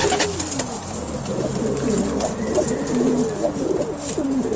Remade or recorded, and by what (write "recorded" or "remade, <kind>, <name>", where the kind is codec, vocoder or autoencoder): recorded